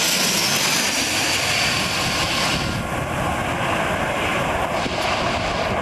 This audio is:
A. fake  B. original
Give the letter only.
B